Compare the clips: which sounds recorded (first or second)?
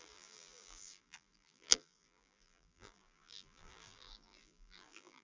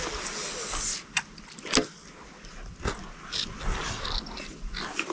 second